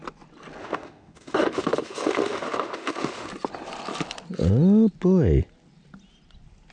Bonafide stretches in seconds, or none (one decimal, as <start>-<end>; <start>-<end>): 0.0-0.6; 3.3-6.7